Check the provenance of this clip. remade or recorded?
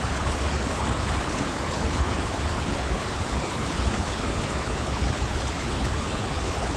remade